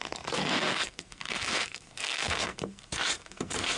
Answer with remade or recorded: remade